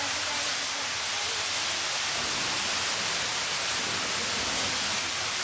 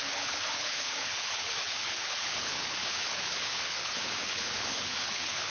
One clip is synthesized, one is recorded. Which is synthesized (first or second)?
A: second